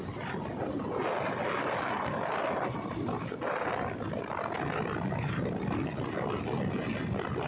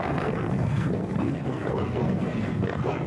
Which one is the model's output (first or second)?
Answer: second